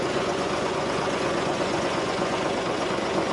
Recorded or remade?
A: remade